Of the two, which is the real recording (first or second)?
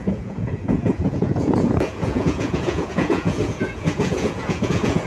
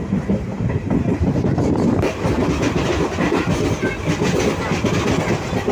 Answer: second